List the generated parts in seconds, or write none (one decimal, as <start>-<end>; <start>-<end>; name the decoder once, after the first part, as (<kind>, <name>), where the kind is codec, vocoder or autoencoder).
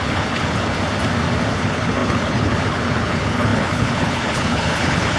0.0-0.8 (codec, HILCodec); 1.5-5.2